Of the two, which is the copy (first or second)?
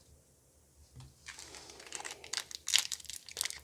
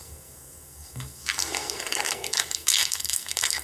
second